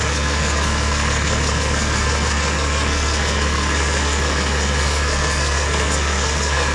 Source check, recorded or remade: remade